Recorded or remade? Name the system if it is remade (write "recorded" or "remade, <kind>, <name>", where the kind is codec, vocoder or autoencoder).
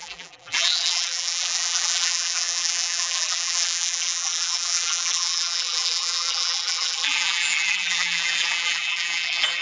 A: remade, vocoder, BigVGAN v2